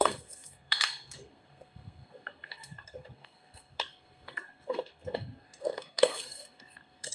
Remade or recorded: remade